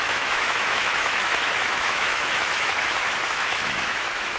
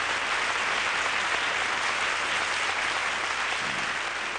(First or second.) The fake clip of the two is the first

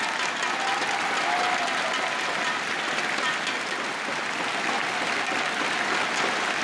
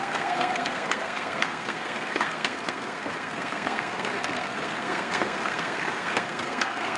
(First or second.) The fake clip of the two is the second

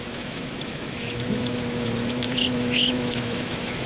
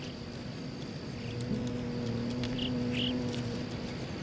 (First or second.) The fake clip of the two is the first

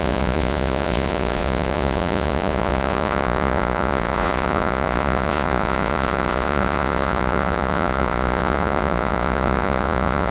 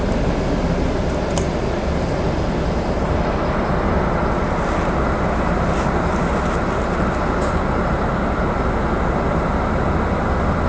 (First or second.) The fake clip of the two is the first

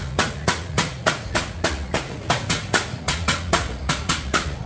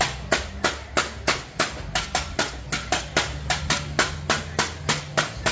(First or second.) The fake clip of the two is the first